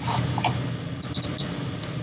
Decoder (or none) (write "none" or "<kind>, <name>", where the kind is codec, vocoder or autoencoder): none